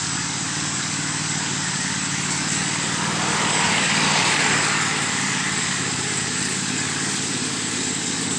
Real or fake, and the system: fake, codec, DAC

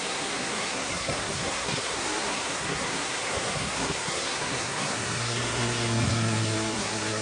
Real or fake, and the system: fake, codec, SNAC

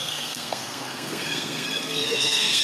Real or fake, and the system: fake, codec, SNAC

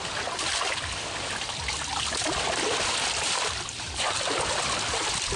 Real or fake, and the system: real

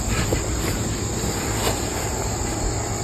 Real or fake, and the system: real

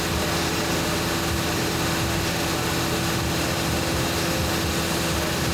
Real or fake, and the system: real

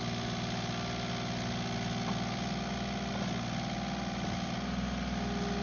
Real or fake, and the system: real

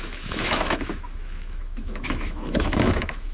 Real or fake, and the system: fake, autoencoder, DAC-VAE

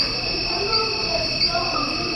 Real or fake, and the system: real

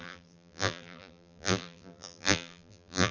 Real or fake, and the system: fake, vocoder, BigVGAN v2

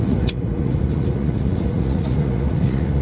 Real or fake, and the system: fake, vocoder, Vocos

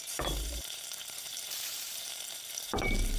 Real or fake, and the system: fake, vocoder, BigVGAN v2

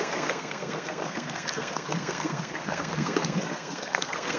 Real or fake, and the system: fake, codec, SNAC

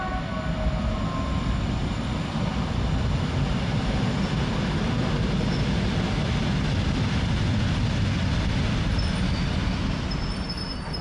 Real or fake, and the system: real